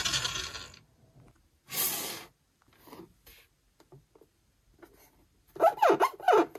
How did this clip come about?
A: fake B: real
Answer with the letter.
B